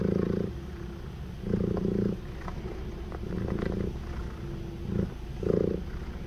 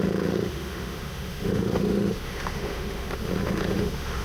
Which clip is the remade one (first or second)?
second